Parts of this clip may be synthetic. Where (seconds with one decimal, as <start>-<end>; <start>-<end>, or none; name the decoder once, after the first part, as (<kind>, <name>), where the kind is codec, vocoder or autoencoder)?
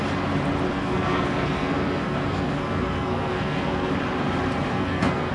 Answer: 0.7-3.9 (codec, SNAC); 4.7-5.3